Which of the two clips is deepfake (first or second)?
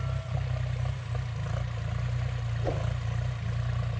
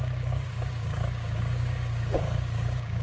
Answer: second